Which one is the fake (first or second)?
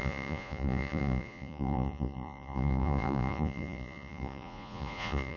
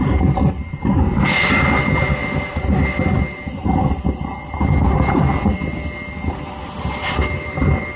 first